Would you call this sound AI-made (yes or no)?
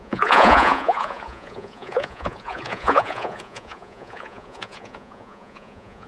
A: yes